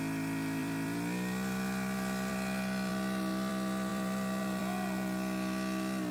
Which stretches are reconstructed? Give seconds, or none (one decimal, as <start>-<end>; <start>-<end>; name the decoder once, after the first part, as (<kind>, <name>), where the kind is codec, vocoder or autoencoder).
0.6-2.3 (vocoder, BigVGAN v2); 3.9-4.6